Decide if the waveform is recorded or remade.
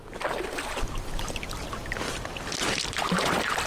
recorded